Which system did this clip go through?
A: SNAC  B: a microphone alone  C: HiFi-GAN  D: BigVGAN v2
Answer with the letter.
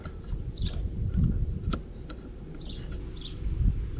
B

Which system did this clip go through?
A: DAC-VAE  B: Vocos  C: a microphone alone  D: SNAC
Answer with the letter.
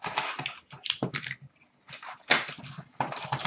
C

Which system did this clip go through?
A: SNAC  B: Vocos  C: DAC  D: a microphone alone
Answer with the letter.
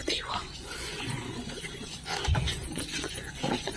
B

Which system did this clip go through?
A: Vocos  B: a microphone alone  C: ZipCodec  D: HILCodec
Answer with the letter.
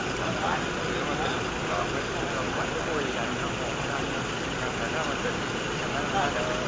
B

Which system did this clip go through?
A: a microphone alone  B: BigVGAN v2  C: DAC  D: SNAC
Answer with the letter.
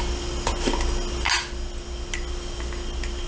A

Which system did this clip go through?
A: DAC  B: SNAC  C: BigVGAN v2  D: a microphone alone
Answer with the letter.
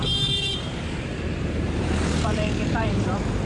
C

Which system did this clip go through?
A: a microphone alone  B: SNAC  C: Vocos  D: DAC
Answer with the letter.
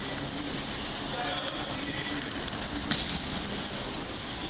A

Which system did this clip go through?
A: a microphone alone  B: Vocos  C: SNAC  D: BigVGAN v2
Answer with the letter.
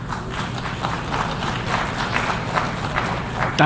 A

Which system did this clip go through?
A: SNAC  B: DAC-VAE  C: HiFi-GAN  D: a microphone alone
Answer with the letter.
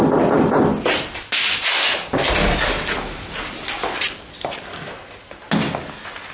D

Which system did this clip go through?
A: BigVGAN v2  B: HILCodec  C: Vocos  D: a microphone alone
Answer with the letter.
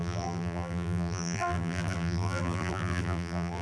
A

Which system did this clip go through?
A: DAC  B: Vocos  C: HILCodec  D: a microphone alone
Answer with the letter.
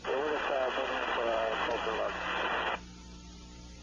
D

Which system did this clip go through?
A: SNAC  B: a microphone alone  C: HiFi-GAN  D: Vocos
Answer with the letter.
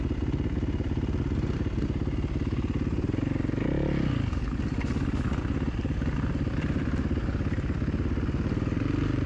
B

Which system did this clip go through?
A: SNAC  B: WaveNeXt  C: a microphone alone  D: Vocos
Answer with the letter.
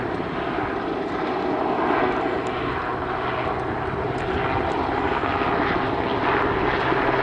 C